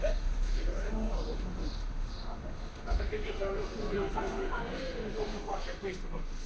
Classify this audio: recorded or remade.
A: remade